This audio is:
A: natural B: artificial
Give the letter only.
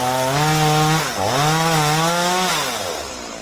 A